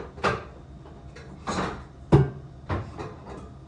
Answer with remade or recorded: recorded